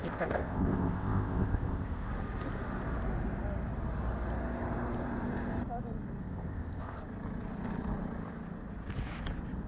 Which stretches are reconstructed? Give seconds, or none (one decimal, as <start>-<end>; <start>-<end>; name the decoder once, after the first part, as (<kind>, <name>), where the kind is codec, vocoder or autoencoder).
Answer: 0.0-2.1 (codec, ZipCodec); 6.2-7.0